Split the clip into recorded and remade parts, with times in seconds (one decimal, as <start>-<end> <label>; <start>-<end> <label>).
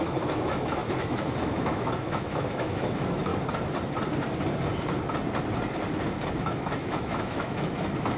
0.0-3.3 remade; 3.3-6.3 recorded; 6.3-8.2 remade